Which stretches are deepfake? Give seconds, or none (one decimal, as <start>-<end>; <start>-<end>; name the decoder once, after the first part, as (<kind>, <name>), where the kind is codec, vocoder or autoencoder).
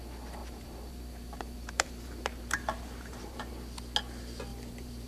0.4-3.5 (vocoder, BigVGAN v2); 4.5-5.1